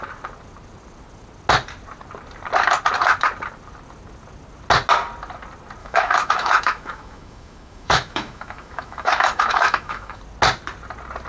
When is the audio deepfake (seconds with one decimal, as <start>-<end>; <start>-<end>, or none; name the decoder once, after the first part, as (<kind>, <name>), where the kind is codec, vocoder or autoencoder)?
5.8-10.2 (autoencoder, DAC-VAE)